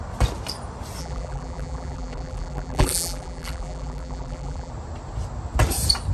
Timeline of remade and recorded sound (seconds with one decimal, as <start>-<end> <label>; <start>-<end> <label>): 0.0-1.0 recorded; 1.0-4.7 remade; 4.7-6.1 recorded